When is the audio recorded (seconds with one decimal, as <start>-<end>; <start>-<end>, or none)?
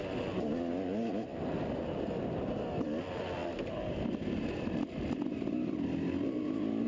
0.0-1.3; 2.1-6.9